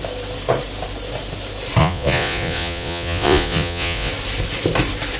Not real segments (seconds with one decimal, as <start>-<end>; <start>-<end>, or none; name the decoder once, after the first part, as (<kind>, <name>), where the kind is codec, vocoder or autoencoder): 1.8-4.1 (vocoder, Vocos)